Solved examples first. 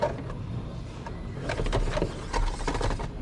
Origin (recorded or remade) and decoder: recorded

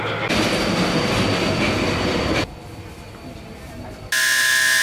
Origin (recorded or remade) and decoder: recorded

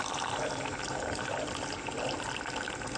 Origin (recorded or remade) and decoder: recorded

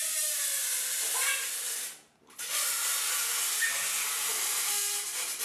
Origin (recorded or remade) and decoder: recorded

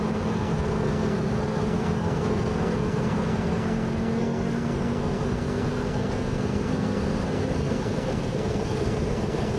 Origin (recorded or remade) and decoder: remade, codec, SNAC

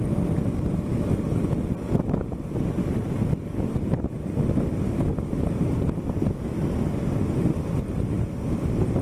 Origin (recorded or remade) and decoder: recorded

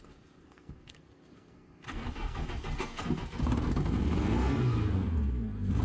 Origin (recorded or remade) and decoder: remade, codec, SNAC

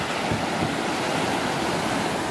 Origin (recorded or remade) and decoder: recorded